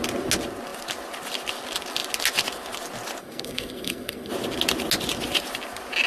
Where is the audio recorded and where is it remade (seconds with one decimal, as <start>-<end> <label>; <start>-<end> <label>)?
0.0-3.2 recorded; 3.2-4.3 remade; 4.3-6.1 recorded